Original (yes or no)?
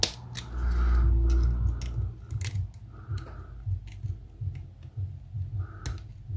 yes